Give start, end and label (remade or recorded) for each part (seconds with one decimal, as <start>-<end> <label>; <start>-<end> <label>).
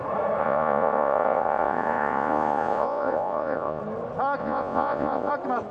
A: 0.0-0.4 recorded; 0.4-3.8 remade; 3.8-4.4 recorded; 4.4-5.3 remade; 5.3-5.7 recorded